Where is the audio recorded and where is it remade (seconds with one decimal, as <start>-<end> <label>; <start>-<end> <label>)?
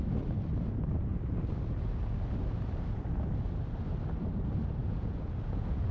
0.0-4.8 recorded; 4.8-5.9 remade